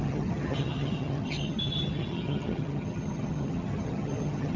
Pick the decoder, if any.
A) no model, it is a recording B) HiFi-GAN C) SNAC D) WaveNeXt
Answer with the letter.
B